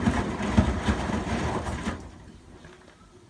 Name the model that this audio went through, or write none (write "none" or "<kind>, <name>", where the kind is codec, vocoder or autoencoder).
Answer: none